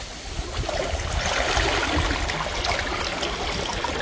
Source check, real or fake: real